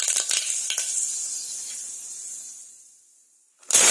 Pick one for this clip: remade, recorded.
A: recorded